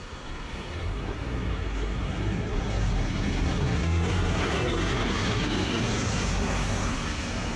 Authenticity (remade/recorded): remade